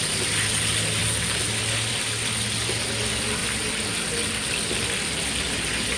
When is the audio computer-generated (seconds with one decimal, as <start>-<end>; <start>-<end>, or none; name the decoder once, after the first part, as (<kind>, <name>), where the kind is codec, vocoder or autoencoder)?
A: none